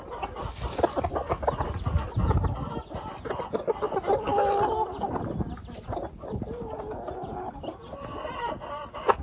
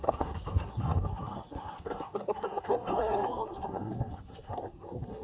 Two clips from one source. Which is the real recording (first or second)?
first